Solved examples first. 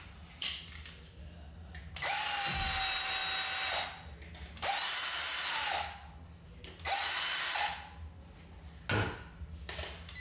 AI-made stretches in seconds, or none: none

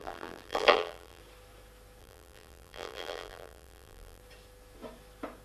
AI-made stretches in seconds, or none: 0.0-1.2 (vocoder, BigVGAN v2); 2.0-4.2

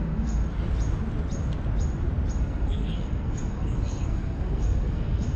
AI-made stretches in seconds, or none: 0.0-0.4 (codec, SNAC); 2.4-5.4

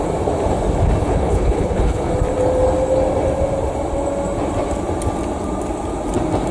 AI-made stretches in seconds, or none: 1.0-2.1 (codec, HILCodec)